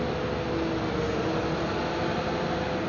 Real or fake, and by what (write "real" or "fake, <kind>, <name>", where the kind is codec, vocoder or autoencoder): real